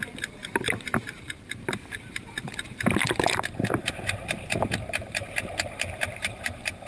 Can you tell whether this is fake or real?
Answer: fake